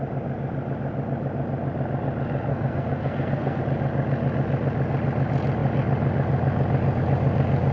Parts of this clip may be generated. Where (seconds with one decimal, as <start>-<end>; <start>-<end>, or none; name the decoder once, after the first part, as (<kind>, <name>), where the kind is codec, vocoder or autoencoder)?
2.5-3.6 (codec, SNAC)